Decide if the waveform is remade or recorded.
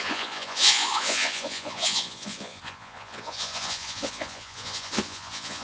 remade